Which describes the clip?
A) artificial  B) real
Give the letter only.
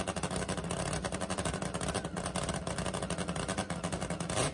B